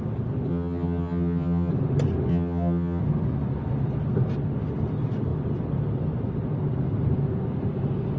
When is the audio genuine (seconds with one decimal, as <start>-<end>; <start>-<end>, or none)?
0.0-0.5; 1.7-2.3; 3.0-8.2